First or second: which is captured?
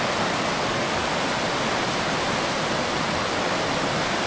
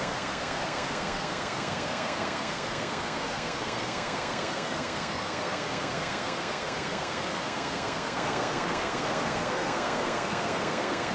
first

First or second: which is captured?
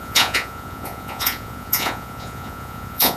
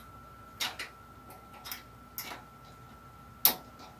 second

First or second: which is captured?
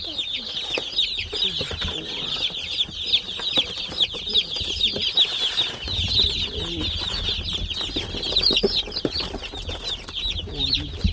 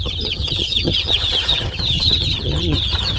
first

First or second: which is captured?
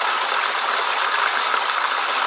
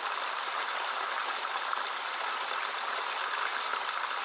first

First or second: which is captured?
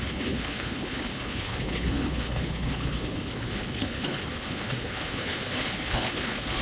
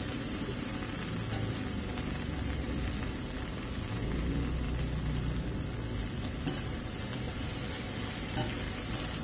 second